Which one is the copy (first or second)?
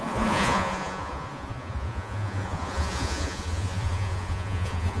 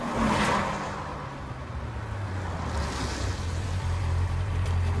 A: first